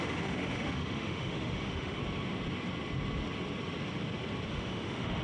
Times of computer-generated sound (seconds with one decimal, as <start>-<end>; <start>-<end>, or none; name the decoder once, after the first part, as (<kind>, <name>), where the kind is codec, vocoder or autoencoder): 0.0-2.0 (autoencoder, DAC-VAE); 4.5-5.2